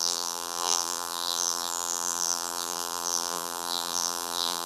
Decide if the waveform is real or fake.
fake